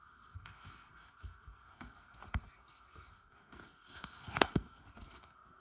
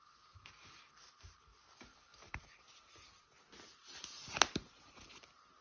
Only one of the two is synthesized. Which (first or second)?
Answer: first